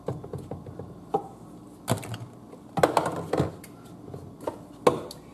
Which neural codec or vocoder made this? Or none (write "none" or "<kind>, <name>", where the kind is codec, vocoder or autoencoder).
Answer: none